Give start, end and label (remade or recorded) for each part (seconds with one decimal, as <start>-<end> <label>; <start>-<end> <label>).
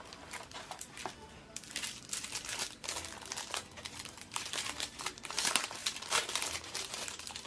0.0-1.0 remade; 1.0-4.1 recorded; 4.1-7.5 remade